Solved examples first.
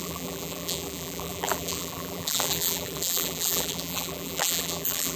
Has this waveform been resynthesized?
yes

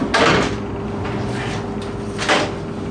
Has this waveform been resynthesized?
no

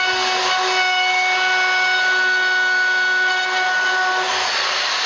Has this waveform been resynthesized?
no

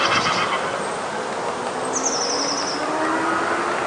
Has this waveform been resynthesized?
no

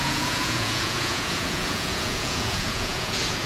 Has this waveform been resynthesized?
yes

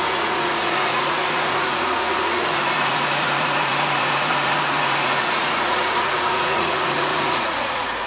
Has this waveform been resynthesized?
yes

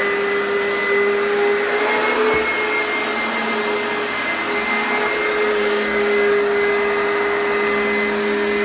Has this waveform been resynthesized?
no